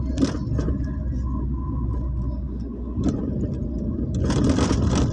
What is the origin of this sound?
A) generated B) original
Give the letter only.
B